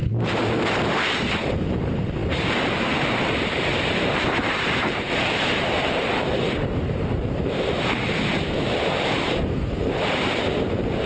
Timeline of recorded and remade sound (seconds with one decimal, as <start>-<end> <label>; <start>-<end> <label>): 0.0-11.1 remade